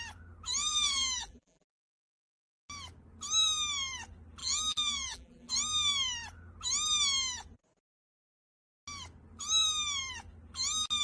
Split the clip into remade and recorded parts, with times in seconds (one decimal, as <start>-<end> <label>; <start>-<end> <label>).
0.0-0.6 recorded; 0.6-1.8 remade; 1.8-4.4 recorded; 4.4-5.5 remade; 5.5-11.0 recorded